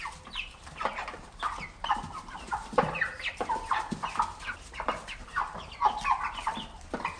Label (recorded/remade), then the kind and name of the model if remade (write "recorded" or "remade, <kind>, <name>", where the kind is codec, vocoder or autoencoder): remade, vocoder, BigVGAN v2